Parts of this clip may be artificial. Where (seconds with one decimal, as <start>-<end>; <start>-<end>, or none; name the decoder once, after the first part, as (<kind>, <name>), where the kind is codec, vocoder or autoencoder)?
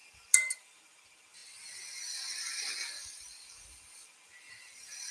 none